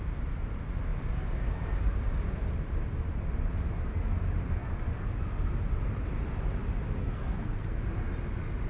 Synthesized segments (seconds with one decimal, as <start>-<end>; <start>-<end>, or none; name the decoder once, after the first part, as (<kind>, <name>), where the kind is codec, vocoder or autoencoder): 7.0-7.8 (codec, SNAC)